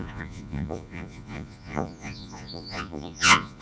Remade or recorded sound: remade